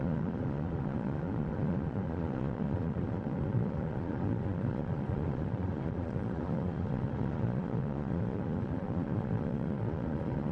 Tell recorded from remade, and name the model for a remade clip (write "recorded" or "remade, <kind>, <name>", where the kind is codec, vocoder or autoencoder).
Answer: remade, vocoder, Vocos